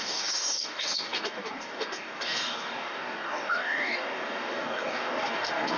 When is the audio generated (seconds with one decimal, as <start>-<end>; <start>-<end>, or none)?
0.0-5.8